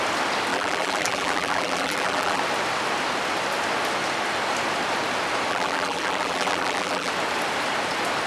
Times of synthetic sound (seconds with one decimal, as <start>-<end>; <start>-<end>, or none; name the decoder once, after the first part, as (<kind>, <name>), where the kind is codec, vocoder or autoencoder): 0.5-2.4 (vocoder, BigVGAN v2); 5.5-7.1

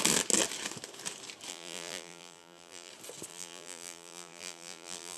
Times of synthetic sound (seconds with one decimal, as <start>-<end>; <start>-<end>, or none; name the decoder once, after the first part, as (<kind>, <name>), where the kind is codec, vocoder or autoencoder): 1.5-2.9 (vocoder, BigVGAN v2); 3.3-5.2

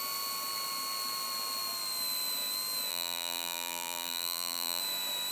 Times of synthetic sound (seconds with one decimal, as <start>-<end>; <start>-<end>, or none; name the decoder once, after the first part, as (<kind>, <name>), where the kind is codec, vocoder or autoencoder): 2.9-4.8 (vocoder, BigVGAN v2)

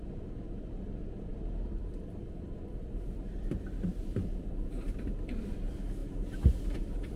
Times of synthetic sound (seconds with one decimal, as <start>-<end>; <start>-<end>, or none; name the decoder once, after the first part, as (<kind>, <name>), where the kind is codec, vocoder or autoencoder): 0.0-6.0 (vocoder, BigVGAN v2); 6.6-7.2

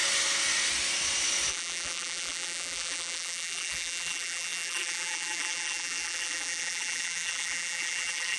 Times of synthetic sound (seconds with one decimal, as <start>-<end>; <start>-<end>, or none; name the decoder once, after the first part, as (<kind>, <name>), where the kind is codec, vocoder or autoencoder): 1.5-8.4 (vocoder, BigVGAN v2)

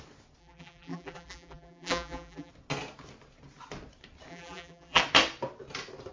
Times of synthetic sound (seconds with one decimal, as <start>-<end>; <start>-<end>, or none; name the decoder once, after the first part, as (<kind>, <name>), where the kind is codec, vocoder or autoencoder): 0.4-2.5 (vocoder, BigVGAN v2); 4.3-5.0